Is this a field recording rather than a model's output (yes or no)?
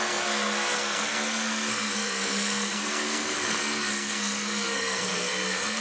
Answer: no